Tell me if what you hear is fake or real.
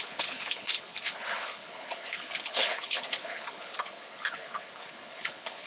fake